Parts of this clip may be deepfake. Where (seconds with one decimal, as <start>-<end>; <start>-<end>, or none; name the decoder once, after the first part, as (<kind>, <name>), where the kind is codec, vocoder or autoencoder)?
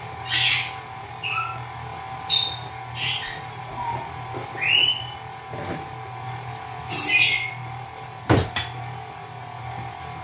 none